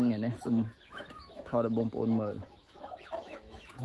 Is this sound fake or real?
fake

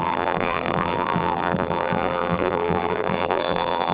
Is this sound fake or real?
fake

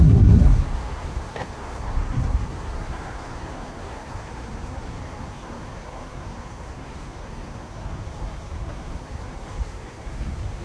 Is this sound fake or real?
fake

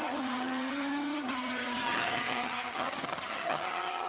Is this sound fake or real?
fake